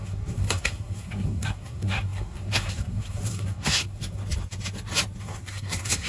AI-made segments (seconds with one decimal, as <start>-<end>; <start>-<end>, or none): 0.0-4.2; 5.2-6.1